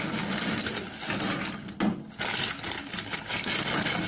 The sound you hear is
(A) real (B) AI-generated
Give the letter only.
A